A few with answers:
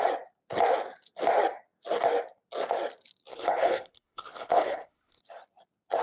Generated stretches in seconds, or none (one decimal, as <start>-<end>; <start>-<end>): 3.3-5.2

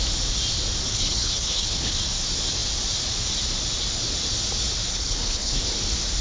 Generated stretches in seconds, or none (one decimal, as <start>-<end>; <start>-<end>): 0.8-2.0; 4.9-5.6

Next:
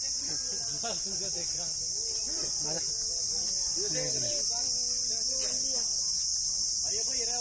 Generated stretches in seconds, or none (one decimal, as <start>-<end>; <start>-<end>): none